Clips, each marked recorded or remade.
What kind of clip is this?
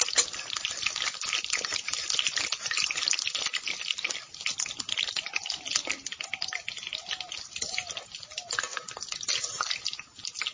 recorded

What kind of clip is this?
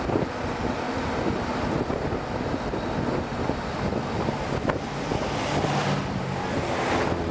recorded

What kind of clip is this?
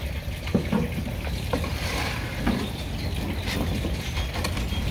recorded